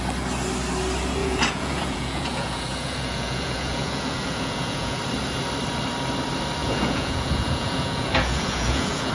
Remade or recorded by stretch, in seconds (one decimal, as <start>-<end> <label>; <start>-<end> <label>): 0.0-1.2 recorded; 1.2-5.0 remade; 5.0-6.6 recorded; 6.6-9.1 remade